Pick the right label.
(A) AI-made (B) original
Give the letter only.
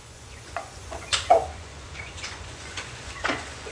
A